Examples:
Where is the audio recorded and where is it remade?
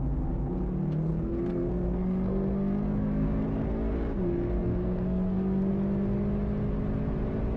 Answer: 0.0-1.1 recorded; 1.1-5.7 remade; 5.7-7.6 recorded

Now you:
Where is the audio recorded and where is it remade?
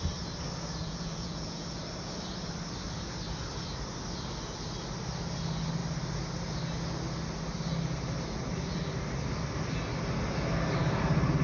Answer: 0.0-0.8 recorded; 0.8-1.8 remade; 1.8-11.4 recorded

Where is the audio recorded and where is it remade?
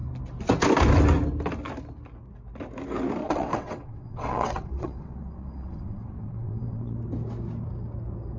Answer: 0.0-3.2 recorded; 3.2-7.0 remade; 7.0-8.4 recorded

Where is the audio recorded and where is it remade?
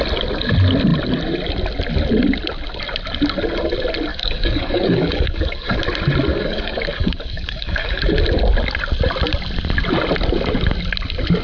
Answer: 0.0-4.1 recorded; 4.1-5.8 remade; 5.8-6.3 recorded; 6.3-8.0 remade; 8.0-11.4 recorded